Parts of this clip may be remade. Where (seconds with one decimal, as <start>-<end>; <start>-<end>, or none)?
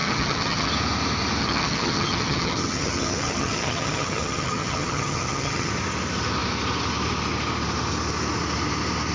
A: 0.0-0.7; 1.4-5.7